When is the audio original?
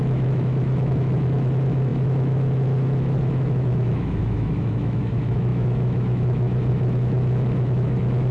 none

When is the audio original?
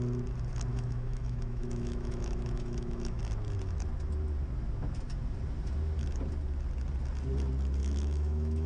0.0-0.7; 3.2-7.8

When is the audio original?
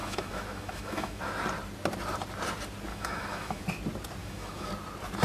1.2-2.9; 3.6-4.2; 4.7-5.2